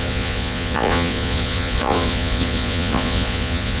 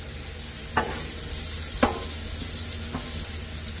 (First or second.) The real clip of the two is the second